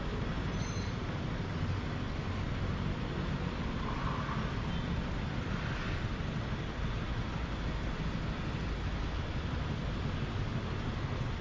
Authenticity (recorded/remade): recorded